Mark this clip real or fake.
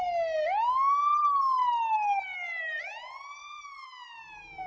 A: real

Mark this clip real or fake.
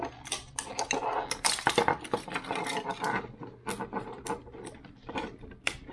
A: real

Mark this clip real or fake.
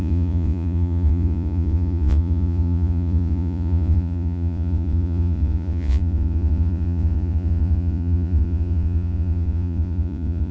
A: fake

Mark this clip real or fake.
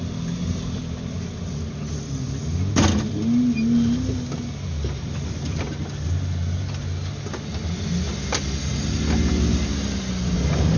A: real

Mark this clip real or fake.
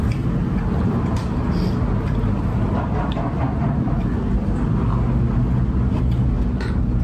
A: real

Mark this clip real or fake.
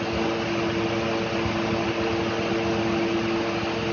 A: real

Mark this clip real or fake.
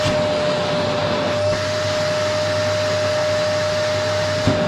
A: real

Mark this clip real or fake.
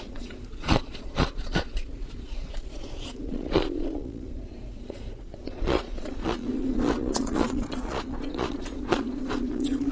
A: fake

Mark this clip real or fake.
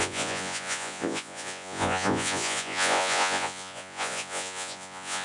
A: fake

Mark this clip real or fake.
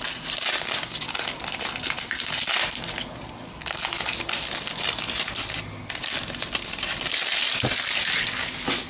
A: real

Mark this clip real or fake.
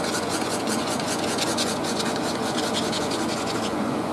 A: fake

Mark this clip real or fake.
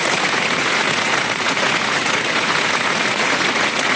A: fake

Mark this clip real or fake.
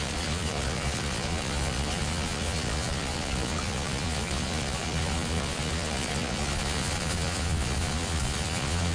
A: fake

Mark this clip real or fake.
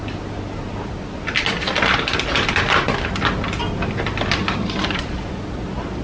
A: real